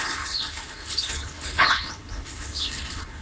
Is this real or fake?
fake